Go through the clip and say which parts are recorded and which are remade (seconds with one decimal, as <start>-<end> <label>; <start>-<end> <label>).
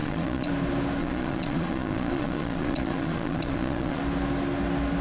0.0-0.5 remade; 0.5-1.0 recorded; 1.0-4.0 remade; 4.0-5.0 recorded